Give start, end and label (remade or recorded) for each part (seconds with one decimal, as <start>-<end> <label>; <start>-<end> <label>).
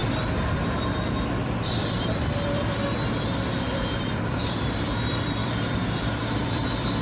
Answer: 0.0-1.3 recorded; 1.3-2.6 remade; 2.6-3.7 recorded; 3.7-7.0 remade